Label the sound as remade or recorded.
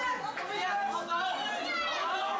recorded